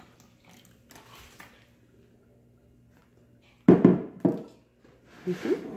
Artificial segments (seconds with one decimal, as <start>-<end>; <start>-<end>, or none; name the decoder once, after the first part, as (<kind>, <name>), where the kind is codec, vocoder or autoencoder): none